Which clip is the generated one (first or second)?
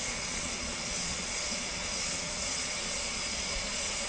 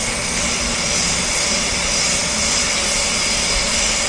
first